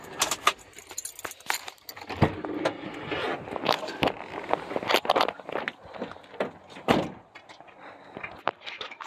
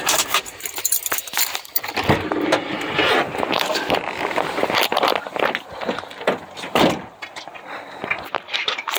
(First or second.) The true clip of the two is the first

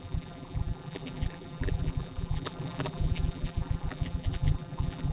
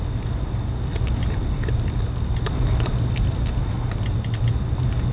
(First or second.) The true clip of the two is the second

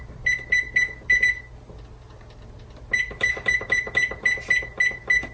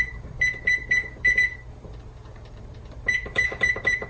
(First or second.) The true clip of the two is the first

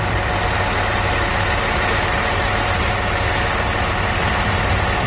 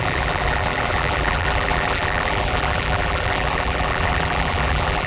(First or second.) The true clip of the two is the first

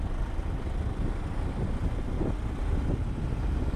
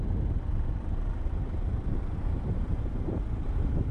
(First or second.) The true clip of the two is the first